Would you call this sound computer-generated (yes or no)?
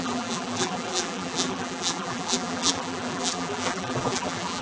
yes